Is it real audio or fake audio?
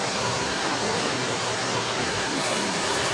fake